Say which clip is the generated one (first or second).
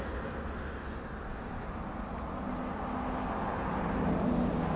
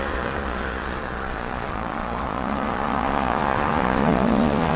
second